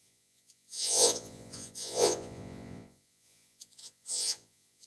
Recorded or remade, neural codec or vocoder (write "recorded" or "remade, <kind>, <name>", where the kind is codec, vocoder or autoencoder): remade, vocoder, Vocos